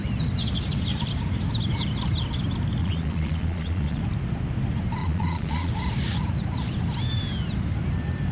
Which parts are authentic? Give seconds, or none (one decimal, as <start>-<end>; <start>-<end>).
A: 0.0-2.8; 4.0-5.0; 5.7-8.3